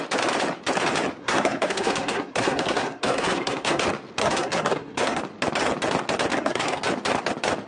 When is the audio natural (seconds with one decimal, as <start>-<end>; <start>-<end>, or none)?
0.0-1.2; 3.8-4.2; 5.2-6.3; 6.8-7.7